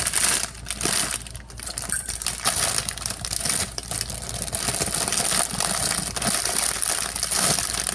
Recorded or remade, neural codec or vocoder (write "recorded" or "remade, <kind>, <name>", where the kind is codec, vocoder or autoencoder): recorded